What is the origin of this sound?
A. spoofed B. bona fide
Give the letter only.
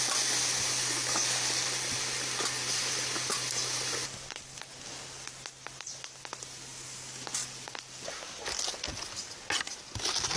B